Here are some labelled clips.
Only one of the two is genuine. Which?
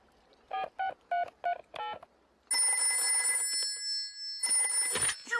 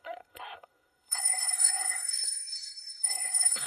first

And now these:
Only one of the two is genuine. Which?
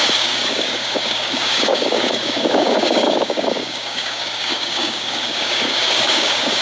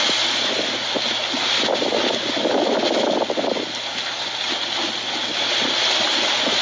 second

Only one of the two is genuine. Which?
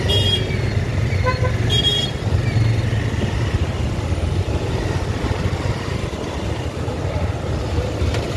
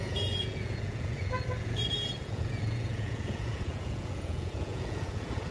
first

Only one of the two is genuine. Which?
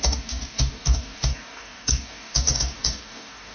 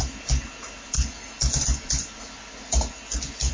second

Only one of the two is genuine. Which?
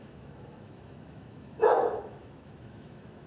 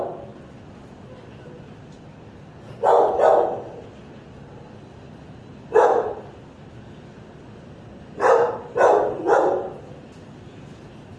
second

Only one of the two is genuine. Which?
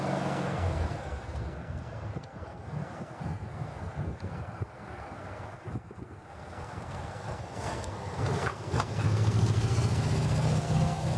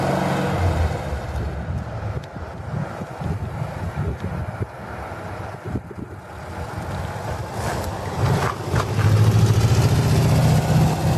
second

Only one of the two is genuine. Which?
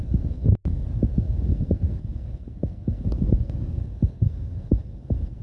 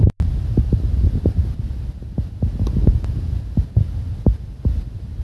second